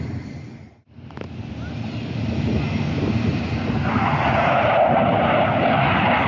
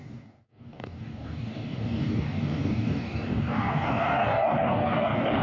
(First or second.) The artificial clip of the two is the second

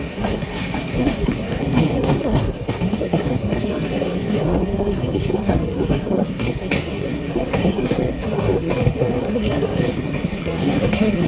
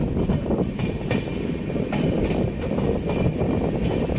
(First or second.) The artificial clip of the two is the first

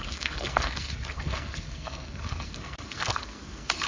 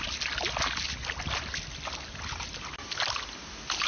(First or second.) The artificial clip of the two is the first